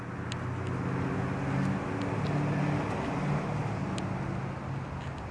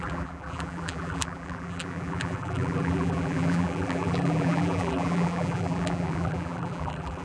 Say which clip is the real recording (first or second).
first